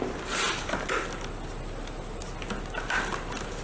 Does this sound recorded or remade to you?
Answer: recorded